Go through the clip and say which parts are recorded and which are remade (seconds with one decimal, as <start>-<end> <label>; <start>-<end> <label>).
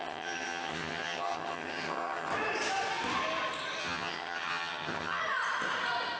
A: 0.0-2.3 remade; 2.3-3.8 recorded; 3.8-5.2 remade; 5.2-6.2 recorded